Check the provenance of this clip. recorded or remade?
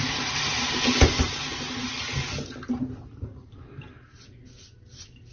recorded